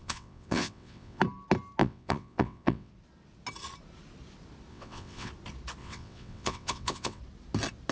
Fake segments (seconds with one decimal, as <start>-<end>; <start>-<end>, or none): 0.0-1.2; 1.8-2.9; 4.7-5.3; 5.8-7.2